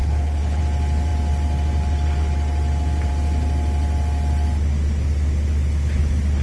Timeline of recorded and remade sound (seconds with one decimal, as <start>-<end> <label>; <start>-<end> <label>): 0.0-0.6 remade; 0.6-6.4 recorded